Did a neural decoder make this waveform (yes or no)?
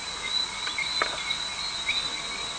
no